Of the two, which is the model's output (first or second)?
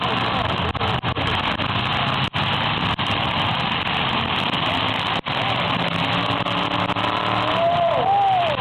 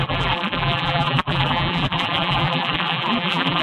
second